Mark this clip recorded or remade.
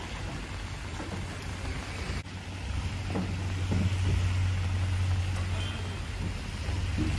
recorded